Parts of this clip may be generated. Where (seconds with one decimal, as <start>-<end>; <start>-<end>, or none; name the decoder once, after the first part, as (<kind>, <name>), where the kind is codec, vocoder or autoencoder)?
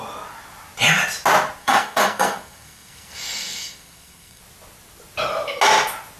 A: 1.6-4.4 (codec, SNAC)